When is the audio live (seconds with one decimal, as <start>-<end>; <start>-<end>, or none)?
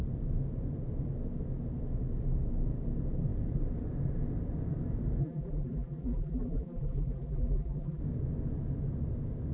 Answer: 0.0-5.2; 8.0-9.5